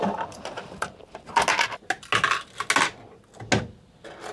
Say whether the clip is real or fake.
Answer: real